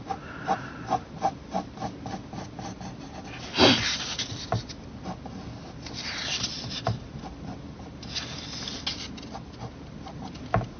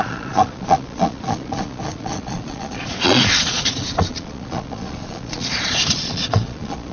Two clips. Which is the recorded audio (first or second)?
first